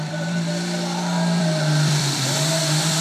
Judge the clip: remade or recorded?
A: remade